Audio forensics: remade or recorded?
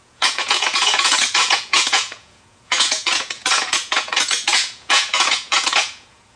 remade